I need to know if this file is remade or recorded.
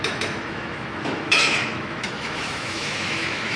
remade